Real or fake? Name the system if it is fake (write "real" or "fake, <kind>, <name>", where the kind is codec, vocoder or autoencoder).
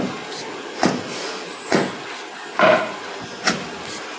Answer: real